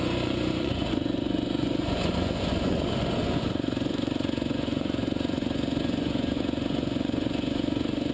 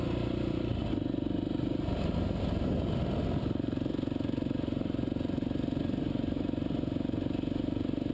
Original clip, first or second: second